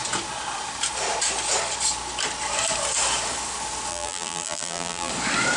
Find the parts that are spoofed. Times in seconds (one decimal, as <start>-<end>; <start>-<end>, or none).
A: 3.9-5.1